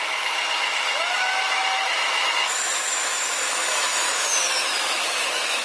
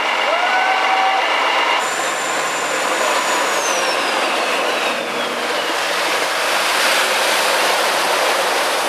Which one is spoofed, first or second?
first